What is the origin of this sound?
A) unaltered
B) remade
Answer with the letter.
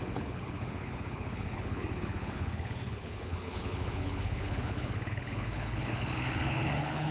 B